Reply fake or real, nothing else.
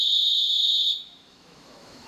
fake